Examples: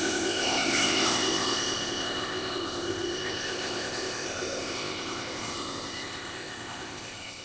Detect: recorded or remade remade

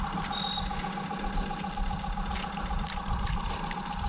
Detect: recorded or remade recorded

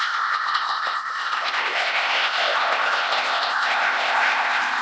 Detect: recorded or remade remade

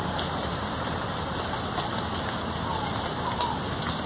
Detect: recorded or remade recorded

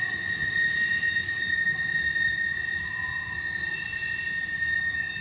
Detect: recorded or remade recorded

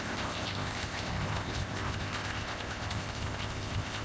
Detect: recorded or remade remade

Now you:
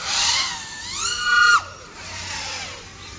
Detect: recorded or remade recorded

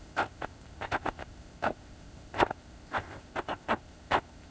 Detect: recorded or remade remade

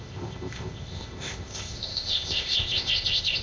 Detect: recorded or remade remade